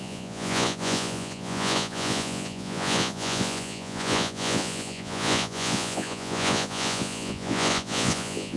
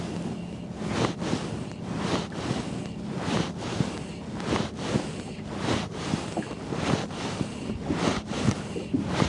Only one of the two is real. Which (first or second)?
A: second